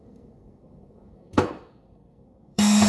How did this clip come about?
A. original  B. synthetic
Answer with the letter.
B